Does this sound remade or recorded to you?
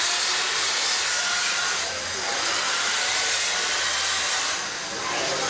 recorded